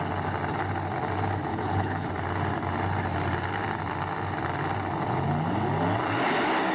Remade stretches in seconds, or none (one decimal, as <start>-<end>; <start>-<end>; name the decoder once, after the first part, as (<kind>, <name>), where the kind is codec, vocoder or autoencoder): 1.5-2.1 (codec, HILCodec)